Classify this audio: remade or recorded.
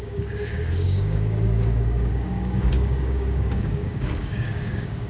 remade